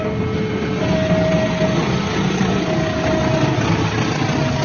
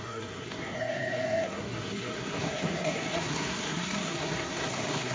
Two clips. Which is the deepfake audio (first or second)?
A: second